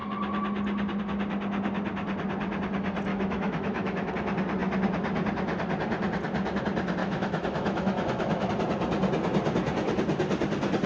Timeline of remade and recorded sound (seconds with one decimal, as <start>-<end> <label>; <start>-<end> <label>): 0.0-3.1 recorded; 3.1-4.1 remade; 4.1-7.0 recorded; 7.0-8.5 remade; 8.5-10.9 recorded